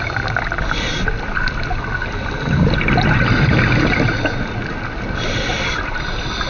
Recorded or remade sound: recorded